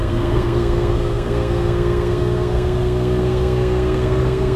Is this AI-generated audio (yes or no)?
yes